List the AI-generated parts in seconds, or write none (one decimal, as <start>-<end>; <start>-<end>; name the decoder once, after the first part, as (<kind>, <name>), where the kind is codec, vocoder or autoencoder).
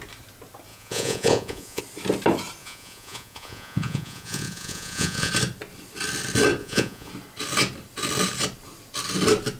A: 0.7-1.8 (vocoder, Vocos); 2.6-5.3; 6.6-7.1